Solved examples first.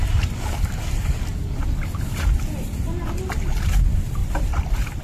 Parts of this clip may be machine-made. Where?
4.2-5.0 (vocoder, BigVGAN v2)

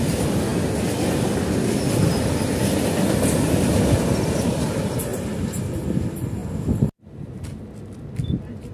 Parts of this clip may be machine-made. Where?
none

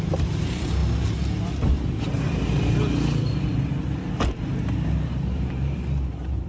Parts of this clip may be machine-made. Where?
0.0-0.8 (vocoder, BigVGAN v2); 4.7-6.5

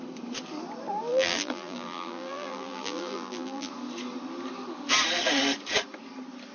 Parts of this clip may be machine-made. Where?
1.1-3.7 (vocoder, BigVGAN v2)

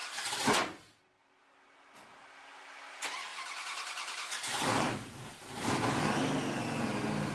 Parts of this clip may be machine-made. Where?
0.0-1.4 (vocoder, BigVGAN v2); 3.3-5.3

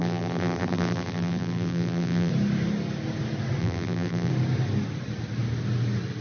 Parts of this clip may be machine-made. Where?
0.0-2.3 (vocoder, BigVGAN v2); 3.6-4.3

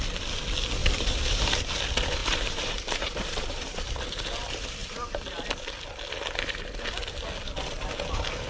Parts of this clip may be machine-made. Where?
0.8-1.7 (vocoder, BigVGAN v2); 2.2-4.3

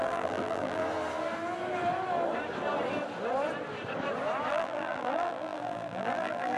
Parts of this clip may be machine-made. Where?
0.0-0.8 (vocoder, BigVGAN v2); 4.5-6.6